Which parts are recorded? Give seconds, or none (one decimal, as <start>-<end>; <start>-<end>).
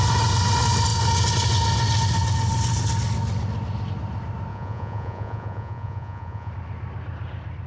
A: 0.0-4.5; 6.5-7.7